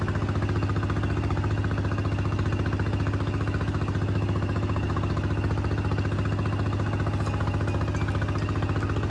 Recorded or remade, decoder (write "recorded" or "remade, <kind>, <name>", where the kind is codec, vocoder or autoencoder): recorded